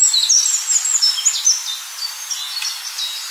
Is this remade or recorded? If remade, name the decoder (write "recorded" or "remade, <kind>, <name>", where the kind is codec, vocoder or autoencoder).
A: recorded